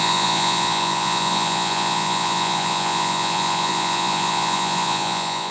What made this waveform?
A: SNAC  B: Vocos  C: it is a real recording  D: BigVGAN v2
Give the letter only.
B